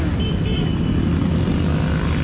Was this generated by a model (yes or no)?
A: no